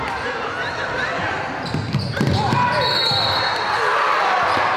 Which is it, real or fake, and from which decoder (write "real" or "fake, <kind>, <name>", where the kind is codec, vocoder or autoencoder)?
real